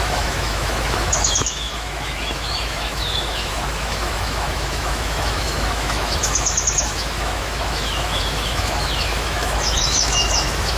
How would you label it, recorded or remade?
remade